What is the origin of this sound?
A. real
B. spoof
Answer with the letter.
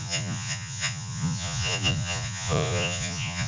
B